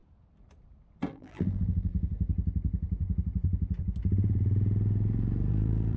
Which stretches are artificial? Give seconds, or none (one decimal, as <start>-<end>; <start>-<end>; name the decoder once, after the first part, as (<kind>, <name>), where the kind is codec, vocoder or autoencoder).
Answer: 1.1-1.9 (vocoder, BigVGAN v2); 5.5-6.0